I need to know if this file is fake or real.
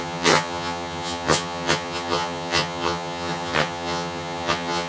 fake